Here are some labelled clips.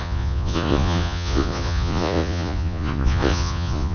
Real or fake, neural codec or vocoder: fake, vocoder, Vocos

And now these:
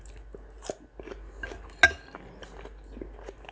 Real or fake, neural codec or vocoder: real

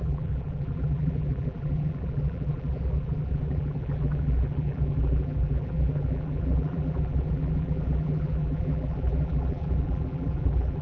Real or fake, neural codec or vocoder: fake, vocoder, BigVGAN v2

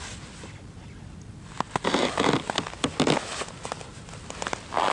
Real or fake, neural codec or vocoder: real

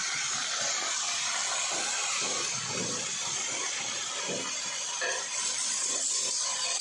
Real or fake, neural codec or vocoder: fake, vocoder, BigVGAN v2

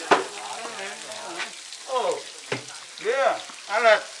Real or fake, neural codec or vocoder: real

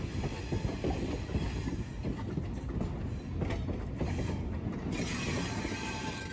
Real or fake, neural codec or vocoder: real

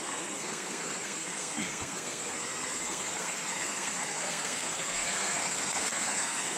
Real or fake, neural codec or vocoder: fake, codec, SNAC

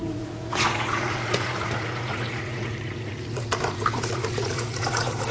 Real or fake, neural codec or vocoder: fake, vocoder, Vocos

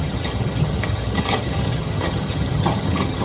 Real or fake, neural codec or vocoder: fake, vocoder, HiFi-GAN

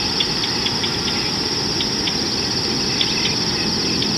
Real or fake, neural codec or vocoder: real